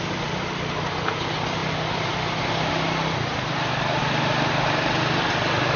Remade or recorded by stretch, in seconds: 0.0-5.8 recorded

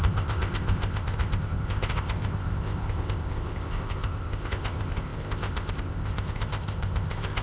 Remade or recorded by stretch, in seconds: 0.0-7.4 remade

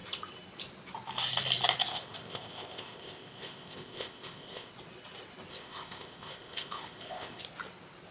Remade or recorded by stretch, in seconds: 0.0-1.9 recorded; 1.9-4.7 remade; 4.7-5.5 recorded; 5.5-7.4 remade; 7.4-8.1 recorded

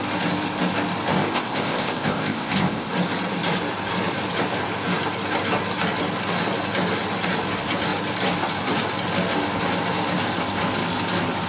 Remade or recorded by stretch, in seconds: 0.0-1.1 recorded; 1.1-2.9 remade; 2.9-11.5 recorded

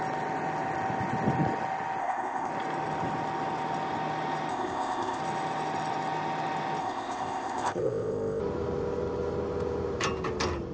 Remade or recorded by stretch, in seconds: 0.0-2.0 recorded; 2.0-2.5 remade; 2.5-4.5 recorded; 4.5-5.2 remade; 5.2-6.8 recorded; 6.8-8.4 remade; 8.4-10.7 recorded

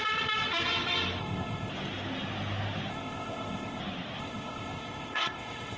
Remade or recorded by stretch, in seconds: 0.0-1.2 recorded; 1.2-1.7 remade; 1.7-2.9 recorded; 2.9-3.8 remade; 3.8-4.2 recorded; 4.2-5.8 remade

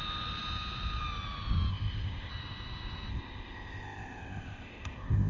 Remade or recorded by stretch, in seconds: 0.0-1.7 recorded; 1.7-2.3 remade; 2.3-3.1 recorded; 3.1-5.3 remade